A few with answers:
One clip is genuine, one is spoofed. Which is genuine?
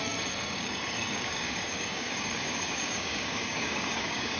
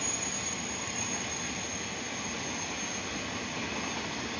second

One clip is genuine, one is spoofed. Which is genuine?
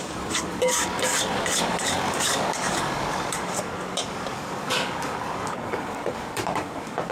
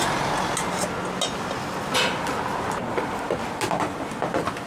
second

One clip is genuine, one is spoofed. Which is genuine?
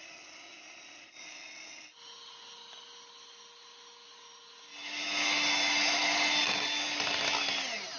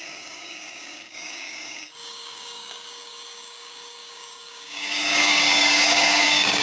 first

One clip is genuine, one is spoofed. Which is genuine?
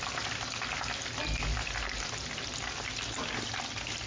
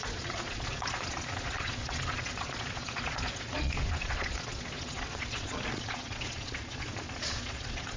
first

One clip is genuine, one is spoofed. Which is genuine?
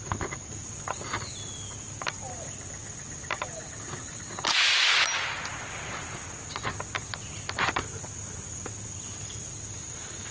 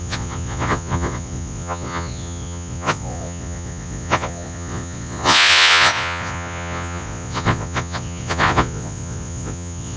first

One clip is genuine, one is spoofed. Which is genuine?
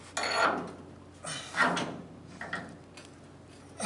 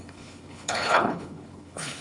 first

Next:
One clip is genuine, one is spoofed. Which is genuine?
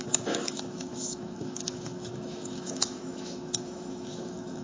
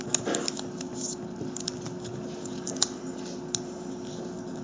second